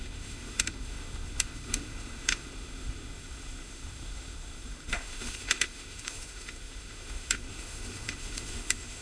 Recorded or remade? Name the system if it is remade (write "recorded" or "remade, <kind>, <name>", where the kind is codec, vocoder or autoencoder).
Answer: remade, autoencoder, DAC-VAE